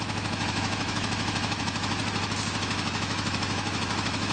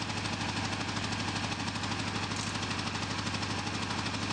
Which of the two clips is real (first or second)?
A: second